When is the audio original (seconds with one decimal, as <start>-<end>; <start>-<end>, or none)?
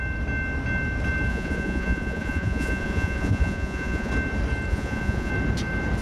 0.0-1.3; 4.1-4.7; 5.3-6.0